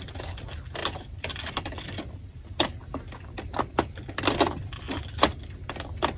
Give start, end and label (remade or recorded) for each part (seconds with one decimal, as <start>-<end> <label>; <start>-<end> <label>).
0.0-6.2 recorded

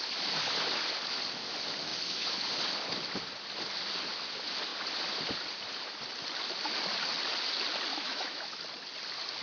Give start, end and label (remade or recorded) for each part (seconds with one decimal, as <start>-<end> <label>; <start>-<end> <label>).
0.0-7.9 recorded; 7.9-8.6 remade; 8.6-9.4 recorded

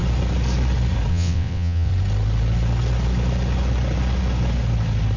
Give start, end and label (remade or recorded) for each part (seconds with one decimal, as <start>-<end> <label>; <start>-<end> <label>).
0.0-1.1 recorded; 1.1-1.9 remade; 1.9-5.2 recorded

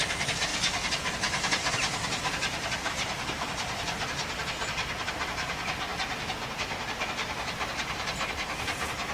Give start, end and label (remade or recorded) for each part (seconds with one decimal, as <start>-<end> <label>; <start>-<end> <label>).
0.0-9.1 recorded

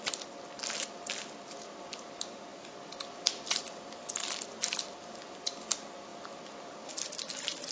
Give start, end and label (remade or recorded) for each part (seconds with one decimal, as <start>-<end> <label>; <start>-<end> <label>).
0.0-7.7 recorded

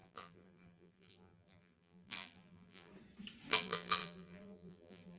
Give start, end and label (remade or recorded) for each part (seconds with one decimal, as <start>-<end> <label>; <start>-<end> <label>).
0.0-2.9 remade; 2.9-3.5 recorded; 3.5-5.2 remade

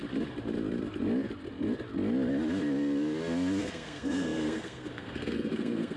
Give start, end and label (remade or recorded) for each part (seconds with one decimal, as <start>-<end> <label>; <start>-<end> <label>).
0.0-3.6 recorded; 3.6-6.0 remade

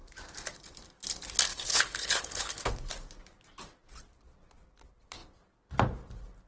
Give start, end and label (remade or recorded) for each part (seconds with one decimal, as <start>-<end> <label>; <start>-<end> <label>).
0.0-1.5 recorded; 1.5-2.9 remade; 2.9-6.5 recorded